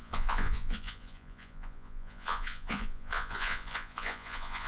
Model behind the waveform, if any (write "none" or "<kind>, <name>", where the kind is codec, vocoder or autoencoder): vocoder, Vocos